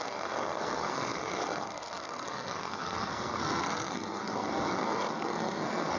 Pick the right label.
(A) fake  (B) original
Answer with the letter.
A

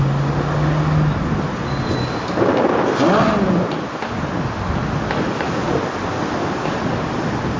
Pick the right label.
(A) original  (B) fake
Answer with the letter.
A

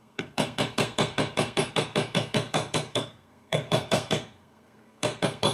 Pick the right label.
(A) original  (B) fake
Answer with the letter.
B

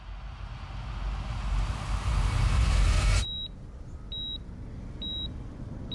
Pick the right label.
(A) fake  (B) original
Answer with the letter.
B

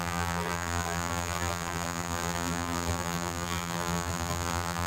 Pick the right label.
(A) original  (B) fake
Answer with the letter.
B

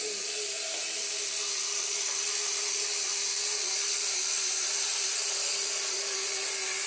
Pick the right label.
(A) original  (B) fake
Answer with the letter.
A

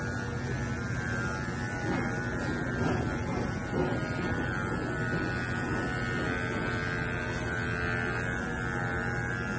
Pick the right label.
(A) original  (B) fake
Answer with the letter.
A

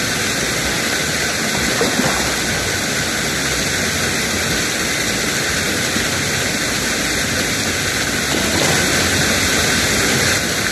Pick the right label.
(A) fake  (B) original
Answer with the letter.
B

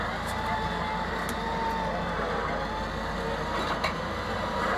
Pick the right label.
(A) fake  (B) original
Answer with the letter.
B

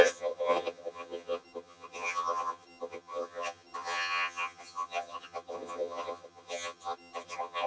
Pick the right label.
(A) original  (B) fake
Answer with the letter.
B